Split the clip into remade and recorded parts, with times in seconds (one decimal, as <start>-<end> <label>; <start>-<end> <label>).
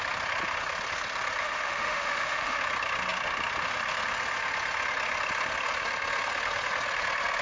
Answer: 0.0-1.4 recorded; 1.4-2.6 remade; 2.6-7.4 recorded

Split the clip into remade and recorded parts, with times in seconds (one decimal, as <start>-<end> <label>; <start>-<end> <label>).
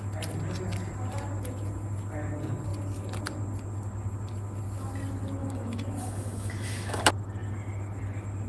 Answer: 0.0-5.4 recorded; 5.4-7.0 remade; 7.0-8.5 recorded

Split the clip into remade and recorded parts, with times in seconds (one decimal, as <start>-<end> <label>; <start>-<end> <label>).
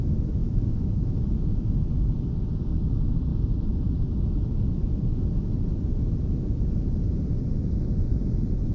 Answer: 0.0-0.4 recorded; 0.4-1.6 remade; 1.6-8.7 recorded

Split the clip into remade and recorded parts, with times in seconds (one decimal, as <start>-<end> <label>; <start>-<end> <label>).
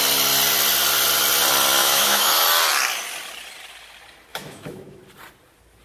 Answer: 0.0-1.8 recorded; 1.8-2.3 remade; 2.3-4.3 recorded; 4.3-5.0 remade; 5.0-5.8 recorded